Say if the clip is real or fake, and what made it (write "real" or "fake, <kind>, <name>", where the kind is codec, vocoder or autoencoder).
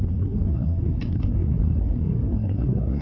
fake, codec, SNAC